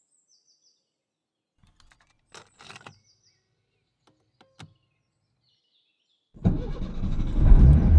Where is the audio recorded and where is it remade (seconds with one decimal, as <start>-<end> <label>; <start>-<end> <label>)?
0.0-6.9 recorded; 6.9-7.6 remade; 7.6-8.0 recorded